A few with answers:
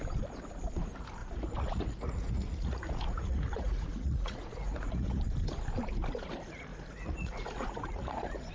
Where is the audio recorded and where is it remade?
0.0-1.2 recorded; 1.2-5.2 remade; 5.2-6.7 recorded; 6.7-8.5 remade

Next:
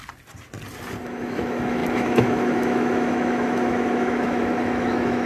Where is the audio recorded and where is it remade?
0.0-1.0 recorded; 1.0-5.3 remade

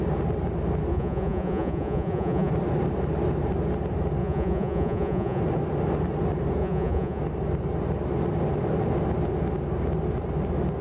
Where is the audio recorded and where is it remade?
0.0-0.9 recorded; 0.9-2.5 remade; 2.5-4.2 recorded; 4.2-5.4 remade; 5.4-6.6 recorded; 6.6-7.2 remade; 7.2-10.8 recorded

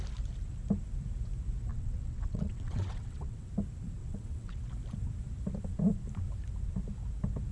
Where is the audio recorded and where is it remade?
0.0-1.7 recorded; 1.7-3.5 remade; 3.5-4.0 recorded; 4.0-4.6 remade; 4.6-7.5 recorded

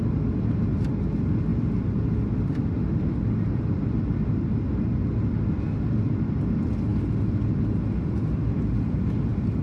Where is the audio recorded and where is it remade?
0.0-9.6 recorded

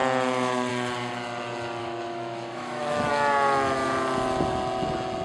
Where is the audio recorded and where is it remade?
0.0-1.8 recorded; 1.8-3.1 remade; 3.1-5.2 recorded